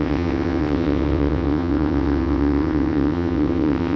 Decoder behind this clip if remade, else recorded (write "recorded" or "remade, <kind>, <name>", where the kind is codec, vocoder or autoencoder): remade, vocoder, WaveNeXt